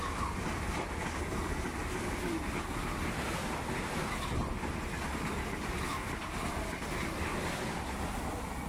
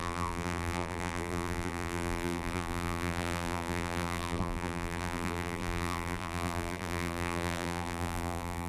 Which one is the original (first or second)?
first